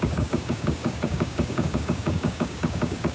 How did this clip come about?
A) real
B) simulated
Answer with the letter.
B